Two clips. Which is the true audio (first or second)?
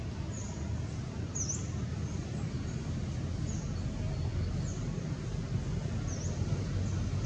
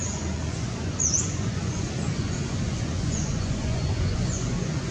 first